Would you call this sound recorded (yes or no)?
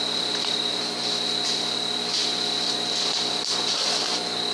yes